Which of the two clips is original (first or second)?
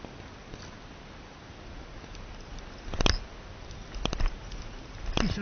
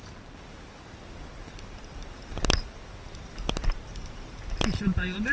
first